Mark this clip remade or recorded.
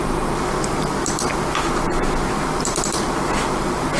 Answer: recorded